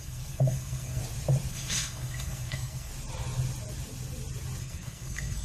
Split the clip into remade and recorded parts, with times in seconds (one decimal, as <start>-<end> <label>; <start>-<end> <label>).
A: 0.0-1.0 remade; 1.0-1.5 recorded; 1.5-2.9 remade; 2.9-4.6 recorded; 4.6-5.4 remade